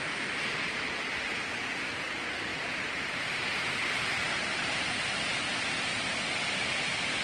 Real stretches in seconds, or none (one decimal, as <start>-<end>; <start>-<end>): 0.0-2.5; 4.8-5.9